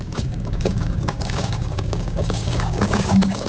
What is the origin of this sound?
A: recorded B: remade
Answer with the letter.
B